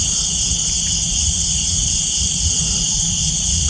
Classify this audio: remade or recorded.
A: remade